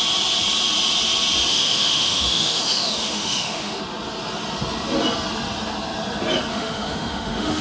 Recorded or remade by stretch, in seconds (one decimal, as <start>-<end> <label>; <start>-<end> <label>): 0.0-1.5 recorded; 1.5-3.8 remade; 3.8-6.5 recorded; 6.5-7.6 remade